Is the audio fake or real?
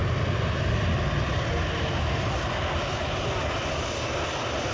real